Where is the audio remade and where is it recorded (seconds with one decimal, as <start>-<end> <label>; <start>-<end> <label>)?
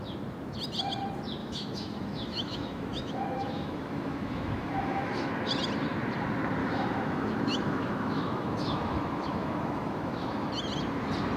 0.0-1.4 recorded; 1.4-5.3 remade; 5.3-6.6 recorded; 6.6-10.5 remade; 10.5-11.4 recorded